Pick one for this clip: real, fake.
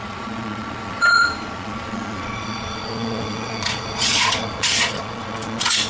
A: fake